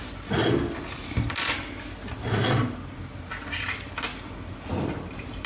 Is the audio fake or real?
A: real